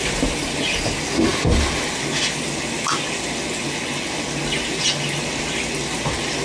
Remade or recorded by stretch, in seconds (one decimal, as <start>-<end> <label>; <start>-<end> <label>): 0.0-6.4 recorded